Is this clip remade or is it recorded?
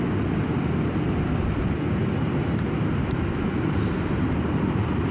recorded